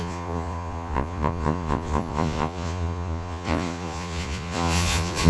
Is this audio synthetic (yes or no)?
yes